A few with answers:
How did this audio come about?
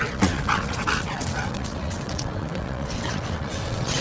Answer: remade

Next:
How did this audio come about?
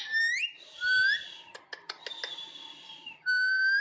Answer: recorded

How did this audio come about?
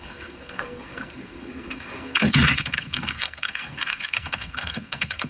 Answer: remade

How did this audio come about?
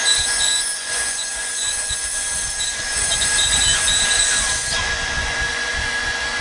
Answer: remade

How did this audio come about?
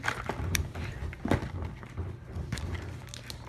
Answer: recorded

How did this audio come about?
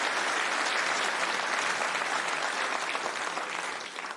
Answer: recorded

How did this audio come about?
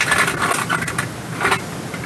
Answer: recorded